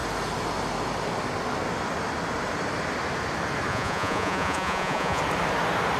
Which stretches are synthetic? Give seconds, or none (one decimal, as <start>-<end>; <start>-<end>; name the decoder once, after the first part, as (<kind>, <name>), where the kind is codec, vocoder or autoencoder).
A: 3.7-5.2 (vocoder, Vocos)